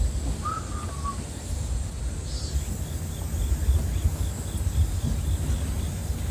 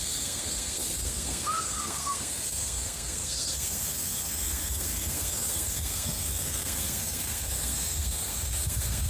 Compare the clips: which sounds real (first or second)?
first